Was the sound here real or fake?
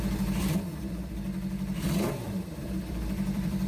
fake